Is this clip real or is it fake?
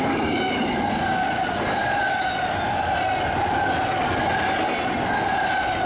real